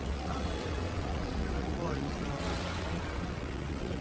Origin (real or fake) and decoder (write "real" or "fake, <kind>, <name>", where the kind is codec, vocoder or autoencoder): fake, vocoder, WaveNeXt